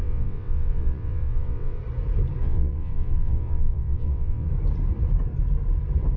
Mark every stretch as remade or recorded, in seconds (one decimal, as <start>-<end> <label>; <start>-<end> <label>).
0.0-1.8 remade; 1.8-2.4 recorded; 2.4-4.5 remade; 4.5-6.2 recorded